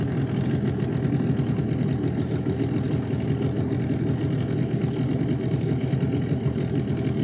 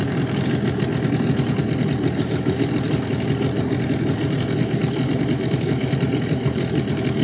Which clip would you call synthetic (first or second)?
second